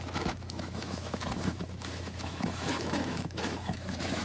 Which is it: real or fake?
fake